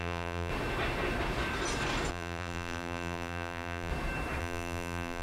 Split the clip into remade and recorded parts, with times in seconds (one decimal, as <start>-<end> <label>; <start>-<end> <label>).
0.0-0.5 remade; 0.5-2.1 recorded; 2.1-3.9 remade; 3.9-4.4 recorded; 4.4-5.2 remade